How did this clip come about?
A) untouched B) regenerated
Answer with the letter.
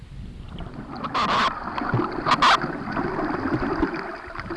A